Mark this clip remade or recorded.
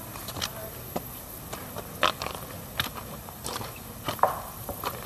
recorded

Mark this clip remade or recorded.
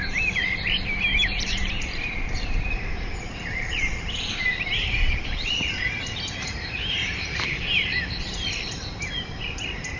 remade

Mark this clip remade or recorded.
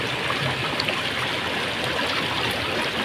recorded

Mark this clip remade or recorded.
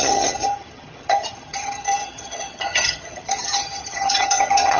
remade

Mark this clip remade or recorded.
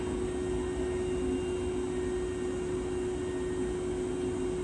recorded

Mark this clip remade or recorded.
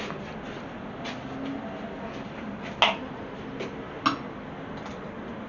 recorded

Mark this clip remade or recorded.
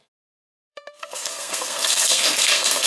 remade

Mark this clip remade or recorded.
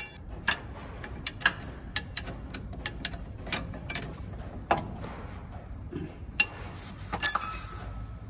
recorded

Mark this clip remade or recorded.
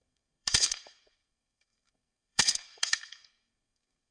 remade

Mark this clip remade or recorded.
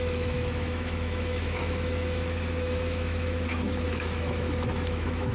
remade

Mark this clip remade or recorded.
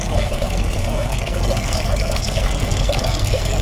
remade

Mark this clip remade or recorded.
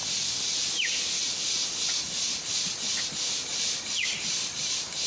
recorded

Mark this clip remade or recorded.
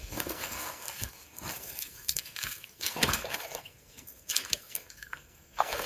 remade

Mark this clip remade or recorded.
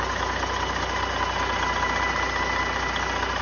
recorded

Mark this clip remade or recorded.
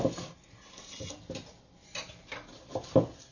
recorded